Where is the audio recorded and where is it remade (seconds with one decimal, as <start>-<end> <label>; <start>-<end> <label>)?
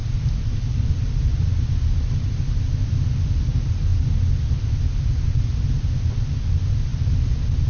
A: 0.0-7.7 recorded